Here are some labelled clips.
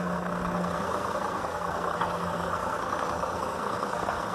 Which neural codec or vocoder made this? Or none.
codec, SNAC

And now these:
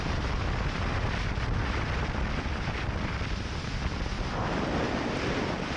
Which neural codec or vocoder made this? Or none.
none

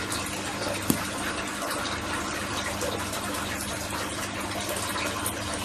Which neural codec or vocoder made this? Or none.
none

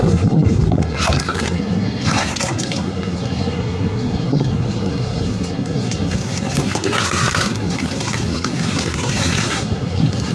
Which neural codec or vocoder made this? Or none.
codec, SNAC